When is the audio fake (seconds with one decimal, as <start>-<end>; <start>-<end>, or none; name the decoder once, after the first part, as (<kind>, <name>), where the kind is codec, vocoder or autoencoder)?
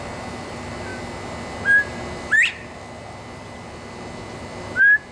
none